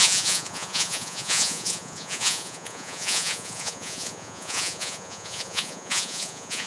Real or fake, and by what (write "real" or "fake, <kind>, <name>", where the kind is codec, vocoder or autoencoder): fake, vocoder, Vocos